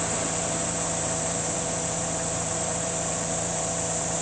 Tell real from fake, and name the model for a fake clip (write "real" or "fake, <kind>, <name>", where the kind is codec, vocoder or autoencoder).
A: fake, vocoder, BigVGAN v2